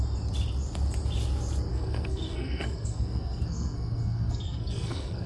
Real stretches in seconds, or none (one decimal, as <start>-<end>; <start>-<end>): 0.0-1.7